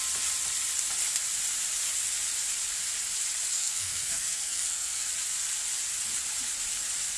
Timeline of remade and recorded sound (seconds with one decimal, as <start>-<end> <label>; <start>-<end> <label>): 0.0-3.5 recorded; 3.5-5.1 remade; 5.1-7.2 recorded